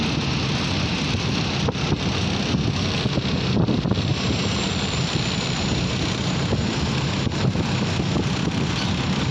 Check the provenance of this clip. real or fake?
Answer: real